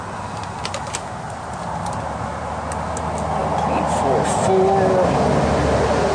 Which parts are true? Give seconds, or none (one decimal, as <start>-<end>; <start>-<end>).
0.0-6.1